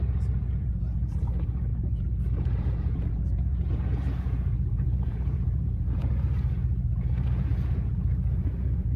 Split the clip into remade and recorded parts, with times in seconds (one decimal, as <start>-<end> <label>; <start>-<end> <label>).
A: 0.0-9.0 remade